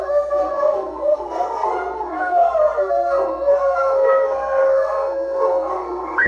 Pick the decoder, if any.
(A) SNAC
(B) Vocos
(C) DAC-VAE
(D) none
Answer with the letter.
A